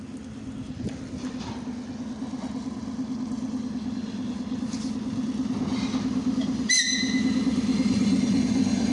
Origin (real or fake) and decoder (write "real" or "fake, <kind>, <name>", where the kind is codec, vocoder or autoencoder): real